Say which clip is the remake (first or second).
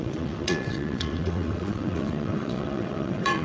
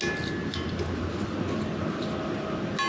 first